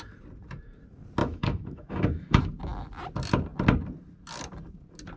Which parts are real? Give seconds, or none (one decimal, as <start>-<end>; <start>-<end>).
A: 0.0-1.2; 2.4-5.2